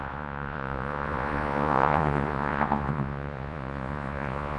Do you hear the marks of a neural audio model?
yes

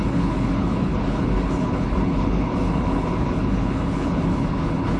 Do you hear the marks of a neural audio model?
yes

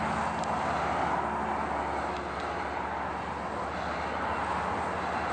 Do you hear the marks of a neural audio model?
no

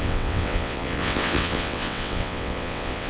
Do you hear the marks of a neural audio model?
yes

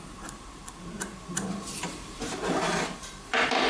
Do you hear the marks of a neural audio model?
yes